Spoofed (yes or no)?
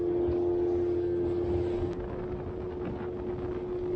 no